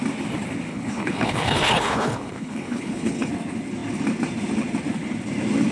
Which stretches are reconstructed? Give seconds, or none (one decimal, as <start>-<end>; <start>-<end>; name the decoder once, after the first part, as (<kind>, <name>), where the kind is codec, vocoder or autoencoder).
0.7-3.3 (codec, HILCodec)